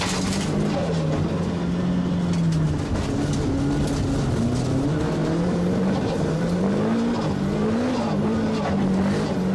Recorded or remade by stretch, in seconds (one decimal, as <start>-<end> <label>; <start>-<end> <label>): 0.0-5.2 recorded; 5.2-6.6 remade; 6.6-9.5 recorded